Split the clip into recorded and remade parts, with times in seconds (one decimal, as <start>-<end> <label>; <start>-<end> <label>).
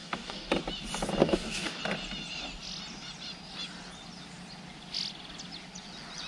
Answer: 0.0-0.5 remade; 0.5-1.2 recorded; 1.2-1.8 remade; 1.8-6.3 recorded